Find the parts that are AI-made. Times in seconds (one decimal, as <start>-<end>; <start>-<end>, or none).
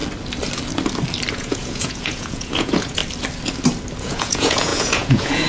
1.3-3.0; 4.0-5.5